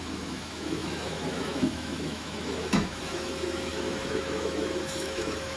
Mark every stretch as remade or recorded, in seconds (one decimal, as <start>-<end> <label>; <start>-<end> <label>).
0.0-5.6 remade